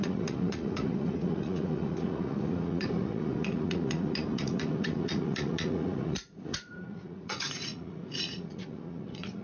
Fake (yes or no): yes